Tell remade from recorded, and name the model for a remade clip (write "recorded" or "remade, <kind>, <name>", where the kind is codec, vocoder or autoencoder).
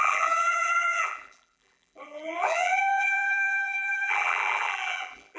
remade, vocoder, BigVGAN v2